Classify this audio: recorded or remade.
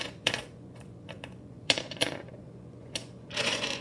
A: remade